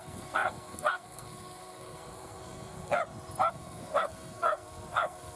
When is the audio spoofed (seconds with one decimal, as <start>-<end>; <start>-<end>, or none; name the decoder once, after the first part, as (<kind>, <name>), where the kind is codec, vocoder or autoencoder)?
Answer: 0.0-3.0 (codec, SNAC); 3.5-5.4